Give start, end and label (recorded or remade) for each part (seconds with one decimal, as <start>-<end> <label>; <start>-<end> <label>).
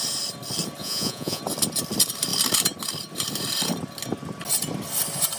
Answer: 0.0-0.8 recorded; 0.8-1.4 remade; 1.4-5.4 recorded